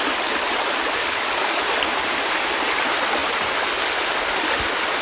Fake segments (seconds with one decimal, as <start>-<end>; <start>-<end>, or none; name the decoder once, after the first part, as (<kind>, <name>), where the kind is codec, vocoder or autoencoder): 1.0-1.6 (codec, DAC)